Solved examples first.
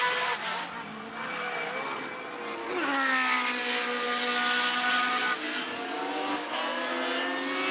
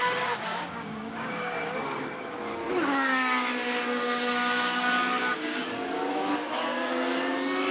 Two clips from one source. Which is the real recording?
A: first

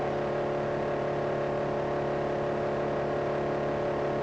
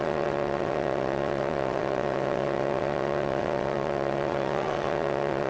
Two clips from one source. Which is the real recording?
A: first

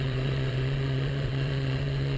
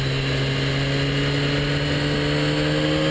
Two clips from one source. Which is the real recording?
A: second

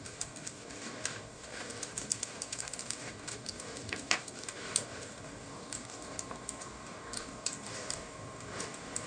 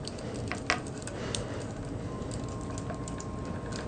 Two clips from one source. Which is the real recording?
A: second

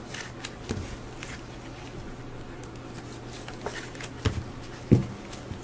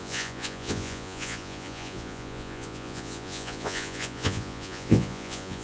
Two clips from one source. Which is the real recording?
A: first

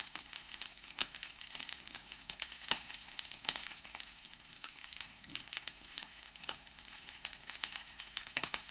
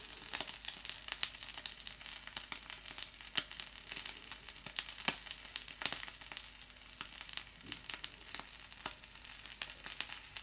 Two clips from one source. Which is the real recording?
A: second